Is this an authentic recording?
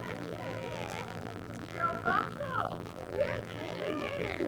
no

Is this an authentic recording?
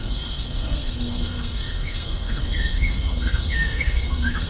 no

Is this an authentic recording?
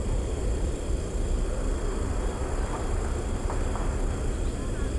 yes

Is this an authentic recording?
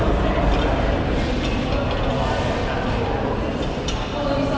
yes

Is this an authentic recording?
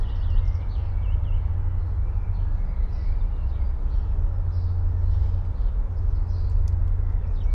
yes